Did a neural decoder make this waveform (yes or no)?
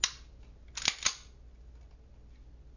no